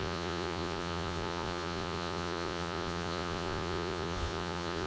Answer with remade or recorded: remade